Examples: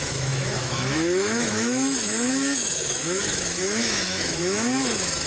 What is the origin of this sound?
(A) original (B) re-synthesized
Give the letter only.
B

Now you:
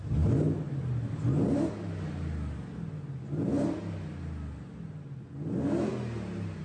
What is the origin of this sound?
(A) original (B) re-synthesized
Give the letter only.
A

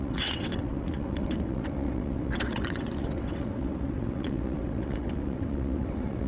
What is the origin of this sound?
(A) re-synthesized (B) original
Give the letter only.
A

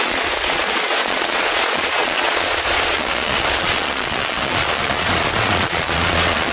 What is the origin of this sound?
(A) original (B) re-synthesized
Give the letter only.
B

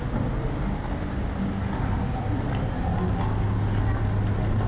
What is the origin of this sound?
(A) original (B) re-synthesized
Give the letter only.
A